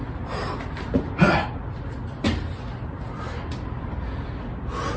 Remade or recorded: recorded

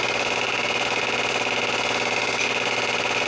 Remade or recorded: recorded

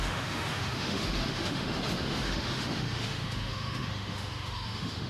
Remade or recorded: remade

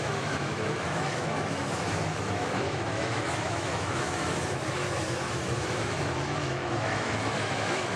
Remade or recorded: remade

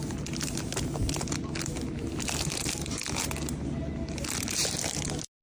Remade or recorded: recorded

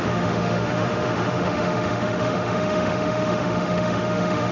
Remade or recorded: remade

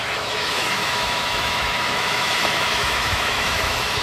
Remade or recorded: remade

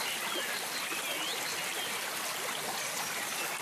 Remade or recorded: recorded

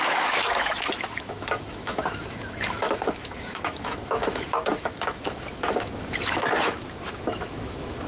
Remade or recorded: remade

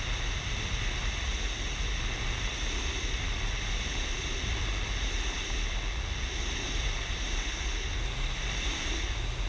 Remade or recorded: recorded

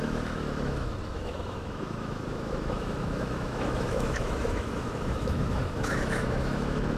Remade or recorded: remade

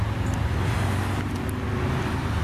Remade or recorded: recorded